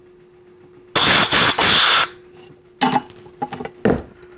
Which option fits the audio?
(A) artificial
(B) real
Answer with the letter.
B